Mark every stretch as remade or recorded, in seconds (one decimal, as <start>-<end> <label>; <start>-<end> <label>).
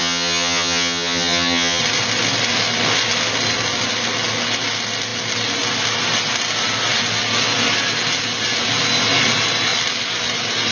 0.0-1.8 remade; 1.8-10.7 recorded